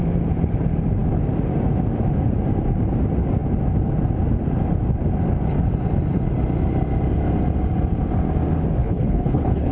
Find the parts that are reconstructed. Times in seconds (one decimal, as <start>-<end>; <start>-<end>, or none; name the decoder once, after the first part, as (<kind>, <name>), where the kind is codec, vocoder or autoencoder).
8.8-9.7 (codec, HILCodec)